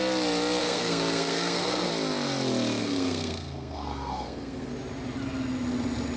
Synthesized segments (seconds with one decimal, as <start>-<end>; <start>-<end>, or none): 0.6-1.9; 2.8-4.7